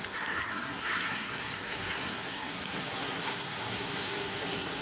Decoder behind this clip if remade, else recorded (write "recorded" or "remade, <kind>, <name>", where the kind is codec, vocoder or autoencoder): remade, codec, SNAC